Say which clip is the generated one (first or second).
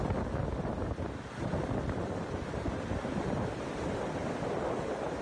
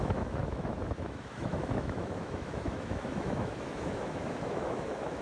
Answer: second